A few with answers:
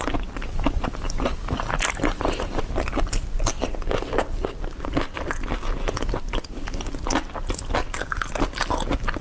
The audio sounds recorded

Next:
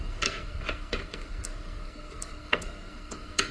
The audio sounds remade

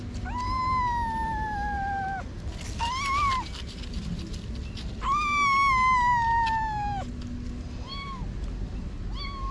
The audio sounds recorded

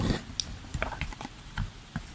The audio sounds recorded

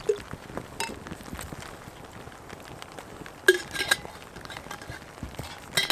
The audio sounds recorded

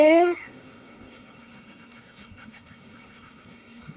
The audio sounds remade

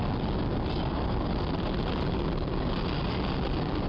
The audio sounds recorded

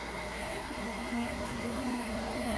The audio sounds remade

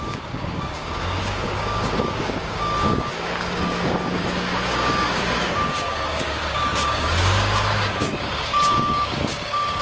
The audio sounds remade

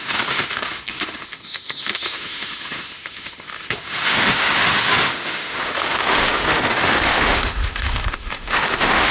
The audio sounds remade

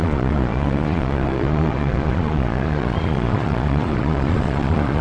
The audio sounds remade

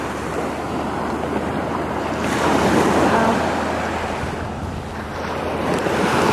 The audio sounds recorded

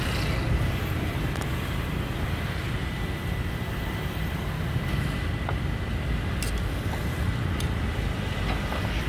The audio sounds recorded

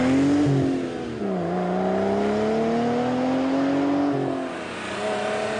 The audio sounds recorded